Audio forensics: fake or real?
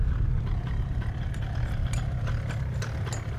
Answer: real